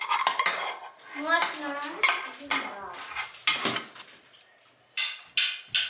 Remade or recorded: recorded